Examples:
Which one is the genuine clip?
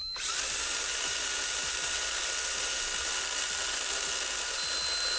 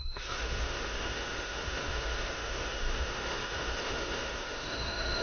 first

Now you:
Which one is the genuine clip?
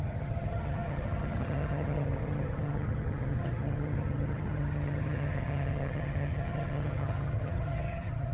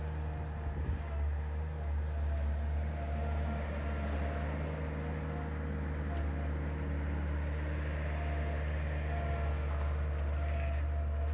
second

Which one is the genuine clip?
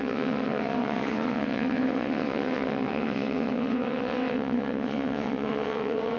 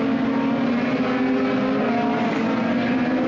second